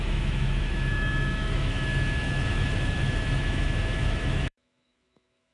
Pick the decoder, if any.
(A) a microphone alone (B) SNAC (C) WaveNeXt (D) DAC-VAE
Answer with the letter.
D